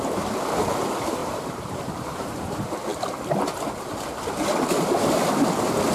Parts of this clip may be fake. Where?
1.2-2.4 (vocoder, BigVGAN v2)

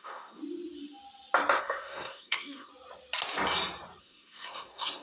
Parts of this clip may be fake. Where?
0.0-0.4 (codec, SNAC); 1.6-2.7; 4.0-5.0

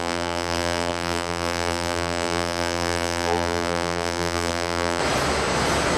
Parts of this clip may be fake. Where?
0.0-5.0 (vocoder, BigVGAN v2)

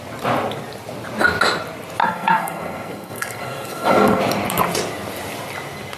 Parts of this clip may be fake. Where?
2.0-4.2 (codec, SNAC)

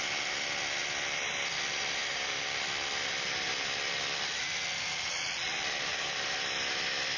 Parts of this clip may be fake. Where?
0.8-1.3 (vocoder, BigVGAN v2); 2.0-3.5; 5.9-6.5

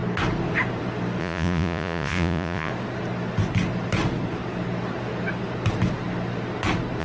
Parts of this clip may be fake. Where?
1.2-2.7 (vocoder, Vocos)